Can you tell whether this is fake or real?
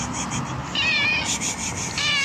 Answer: real